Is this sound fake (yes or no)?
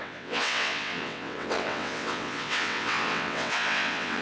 yes